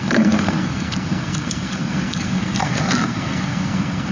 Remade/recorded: remade